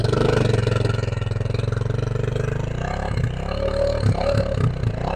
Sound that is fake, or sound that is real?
real